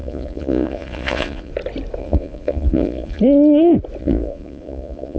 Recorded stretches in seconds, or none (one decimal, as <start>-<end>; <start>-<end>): 1.5-2.0; 3.2-4.0